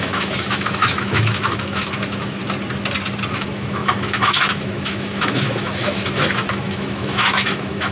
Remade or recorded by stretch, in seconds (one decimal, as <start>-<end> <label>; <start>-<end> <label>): 0.0-2.4 remade; 2.4-3.3 recorded; 3.3-7.9 remade